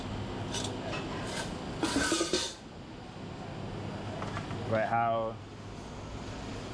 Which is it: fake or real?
real